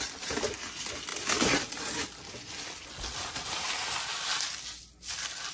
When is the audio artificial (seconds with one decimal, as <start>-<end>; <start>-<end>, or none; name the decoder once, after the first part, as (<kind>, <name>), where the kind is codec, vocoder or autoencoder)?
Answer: none